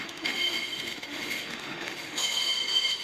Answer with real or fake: fake